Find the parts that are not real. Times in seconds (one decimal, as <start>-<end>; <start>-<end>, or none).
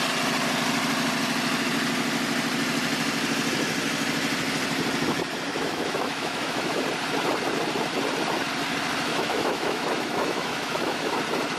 5.5-6.8; 9.1-11.1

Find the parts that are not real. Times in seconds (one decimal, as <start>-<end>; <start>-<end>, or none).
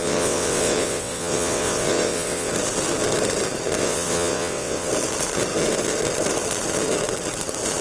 0.0-2.5; 3.8-4.9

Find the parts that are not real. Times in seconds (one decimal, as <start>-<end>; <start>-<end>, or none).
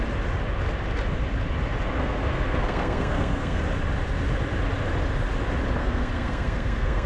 2.0-3.6; 5.8-7.1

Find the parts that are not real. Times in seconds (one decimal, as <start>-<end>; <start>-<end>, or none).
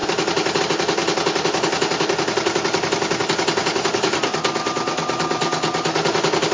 none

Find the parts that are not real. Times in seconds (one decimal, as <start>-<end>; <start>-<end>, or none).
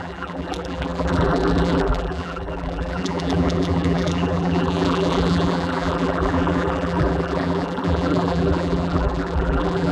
0.0-9.9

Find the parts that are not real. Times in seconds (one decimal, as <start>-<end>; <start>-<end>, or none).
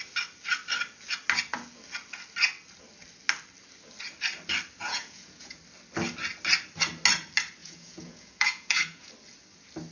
4.8-5.6; 7.6-9.1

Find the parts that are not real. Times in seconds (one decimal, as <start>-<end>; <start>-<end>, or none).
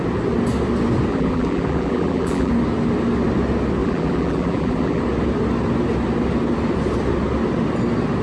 1.1-2.5; 3.8-5.0